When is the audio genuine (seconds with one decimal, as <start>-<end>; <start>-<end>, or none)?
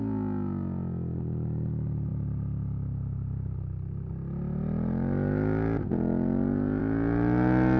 0.0-7.8